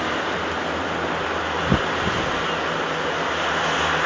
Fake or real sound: real